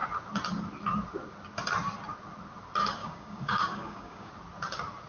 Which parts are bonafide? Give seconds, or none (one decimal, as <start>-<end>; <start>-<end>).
0.0-3.0; 4.3-5.1